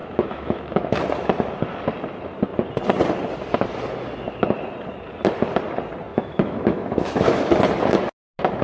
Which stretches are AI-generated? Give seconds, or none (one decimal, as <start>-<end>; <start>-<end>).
0.0-1.0; 6.1-7.6